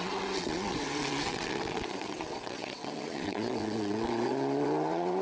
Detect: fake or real fake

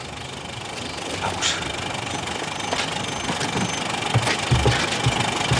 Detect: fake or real real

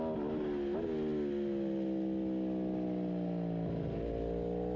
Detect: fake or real real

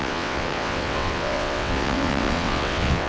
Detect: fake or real fake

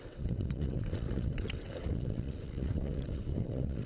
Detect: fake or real fake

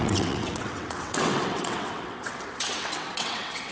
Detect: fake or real fake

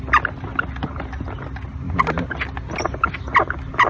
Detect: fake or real real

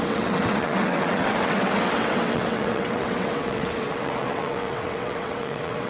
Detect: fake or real fake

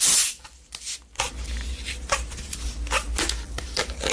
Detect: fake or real real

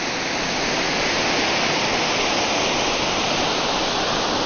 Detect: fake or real real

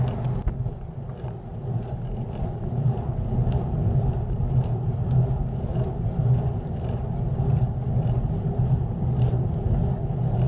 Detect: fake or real real